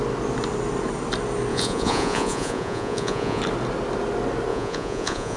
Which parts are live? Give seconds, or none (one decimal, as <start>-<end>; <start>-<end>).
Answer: 0.0-1.5; 3.4-4.5